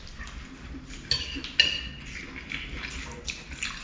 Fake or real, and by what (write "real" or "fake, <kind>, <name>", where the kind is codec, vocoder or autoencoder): real